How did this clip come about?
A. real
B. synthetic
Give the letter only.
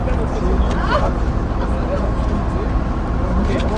A